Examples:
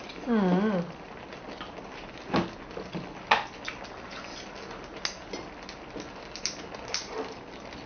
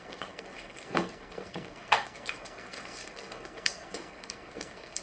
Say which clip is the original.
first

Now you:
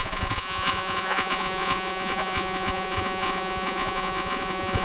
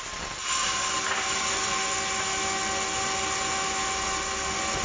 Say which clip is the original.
second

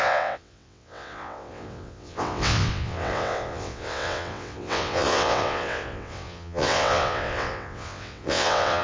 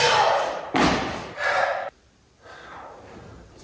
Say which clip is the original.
second